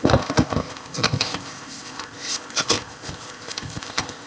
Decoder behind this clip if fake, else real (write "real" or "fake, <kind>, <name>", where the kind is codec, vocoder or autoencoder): fake, codec, ZipCodec